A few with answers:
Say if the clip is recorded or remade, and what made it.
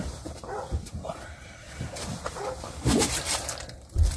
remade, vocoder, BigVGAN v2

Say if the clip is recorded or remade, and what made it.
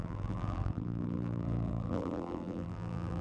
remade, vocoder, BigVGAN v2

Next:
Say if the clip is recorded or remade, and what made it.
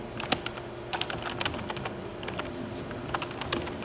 recorded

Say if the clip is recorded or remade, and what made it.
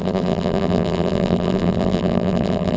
remade, vocoder, BigVGAN v2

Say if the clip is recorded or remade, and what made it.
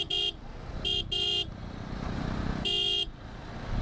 recorded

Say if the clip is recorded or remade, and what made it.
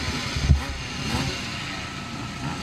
recorded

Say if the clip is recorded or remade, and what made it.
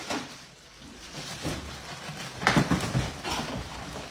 remade, vocoder, BigVGAN v2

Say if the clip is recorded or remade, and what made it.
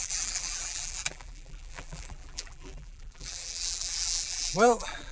remade, vocoder, BigVGAN v2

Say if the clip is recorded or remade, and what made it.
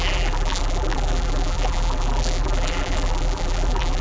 remade, vocoder, BigVGAN v2